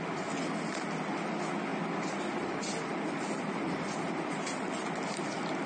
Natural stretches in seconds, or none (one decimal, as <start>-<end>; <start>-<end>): 0.0-1.7; 4.7-5.7